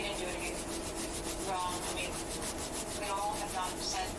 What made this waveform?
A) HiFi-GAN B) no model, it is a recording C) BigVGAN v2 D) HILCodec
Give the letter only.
B